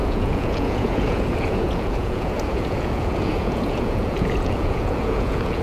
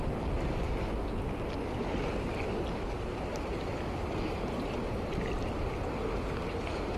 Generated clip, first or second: first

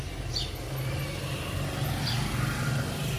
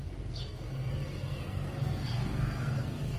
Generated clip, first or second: second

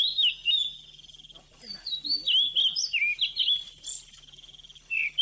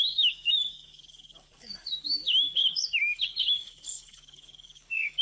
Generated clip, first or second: second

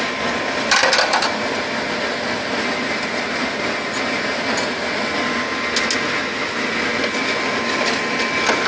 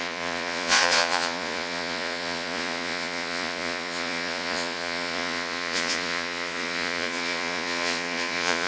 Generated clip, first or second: second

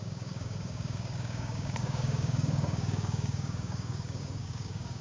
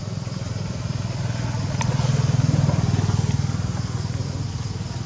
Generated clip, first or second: first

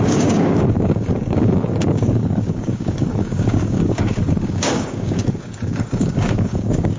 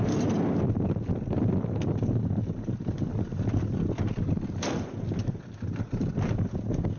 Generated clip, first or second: first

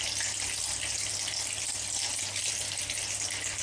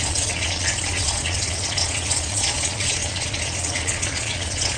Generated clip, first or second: second